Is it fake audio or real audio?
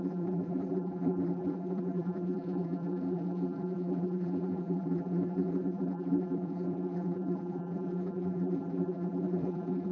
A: fake